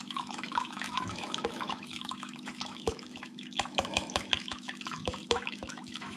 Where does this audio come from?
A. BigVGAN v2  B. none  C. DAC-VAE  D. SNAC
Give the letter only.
C